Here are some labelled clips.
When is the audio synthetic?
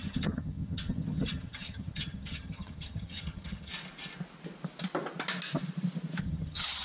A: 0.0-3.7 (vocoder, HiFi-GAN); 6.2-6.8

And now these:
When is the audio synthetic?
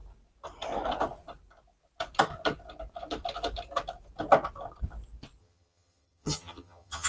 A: 5.4-7.1 (vocoder, HiFi-GAN)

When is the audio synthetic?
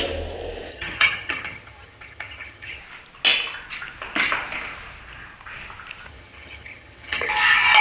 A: 0.7-2.8 (vocoder, HiFi-GAN); 6.1-7.3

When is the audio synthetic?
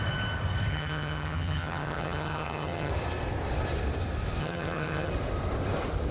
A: 0.7-2.9 (vocoder, HiFi-GAN); 4.4-5.1